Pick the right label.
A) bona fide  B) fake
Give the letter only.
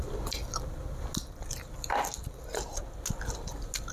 A